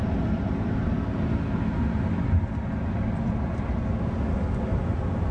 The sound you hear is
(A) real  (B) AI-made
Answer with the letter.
A